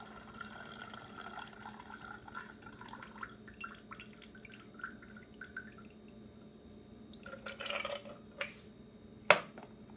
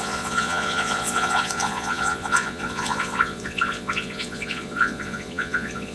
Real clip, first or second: first